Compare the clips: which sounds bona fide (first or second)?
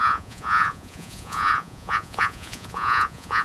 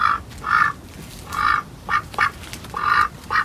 second